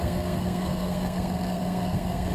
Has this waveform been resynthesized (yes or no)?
yes